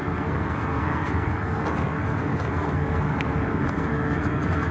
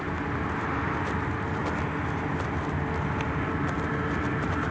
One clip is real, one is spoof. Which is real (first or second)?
second